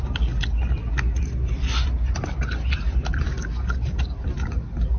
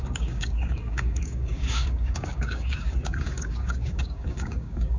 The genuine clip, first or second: first